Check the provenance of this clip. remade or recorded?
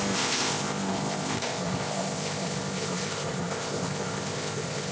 remade